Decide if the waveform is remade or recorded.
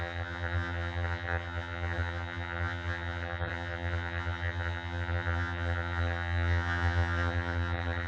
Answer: remade